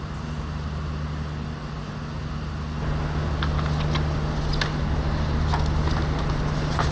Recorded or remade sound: recorded